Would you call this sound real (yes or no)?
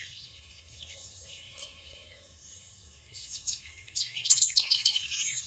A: no